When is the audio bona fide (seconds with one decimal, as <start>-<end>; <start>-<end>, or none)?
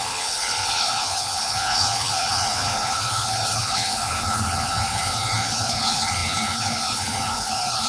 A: none